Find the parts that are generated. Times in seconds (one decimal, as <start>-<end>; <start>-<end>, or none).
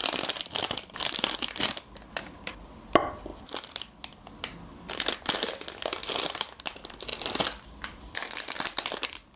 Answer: 0.0-9.4